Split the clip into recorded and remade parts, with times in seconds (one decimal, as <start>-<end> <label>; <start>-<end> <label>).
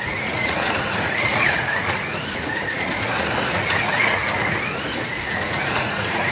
0.0-6.3 remade